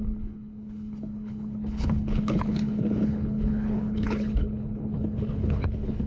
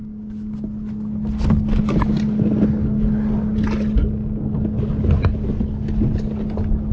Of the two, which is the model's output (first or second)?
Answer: first